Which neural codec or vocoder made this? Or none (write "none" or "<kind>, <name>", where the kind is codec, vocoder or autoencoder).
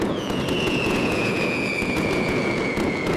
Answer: vocoder, Vocos